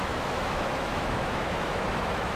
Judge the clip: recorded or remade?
remade